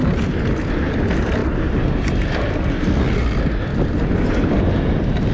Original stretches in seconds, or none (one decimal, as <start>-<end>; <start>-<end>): 0.0-5.3